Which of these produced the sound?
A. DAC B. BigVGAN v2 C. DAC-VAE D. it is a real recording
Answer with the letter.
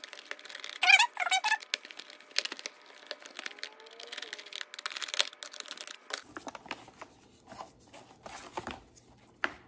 D